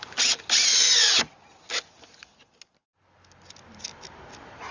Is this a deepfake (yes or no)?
no